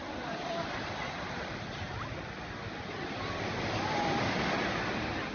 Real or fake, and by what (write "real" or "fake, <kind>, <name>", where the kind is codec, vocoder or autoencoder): real